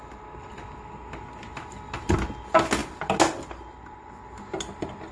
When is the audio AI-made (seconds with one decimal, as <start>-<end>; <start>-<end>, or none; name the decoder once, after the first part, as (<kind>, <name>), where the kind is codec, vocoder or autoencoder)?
none